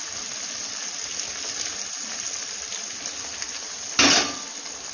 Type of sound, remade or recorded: recorded